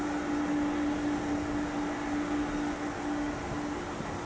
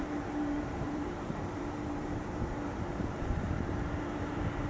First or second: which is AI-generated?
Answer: second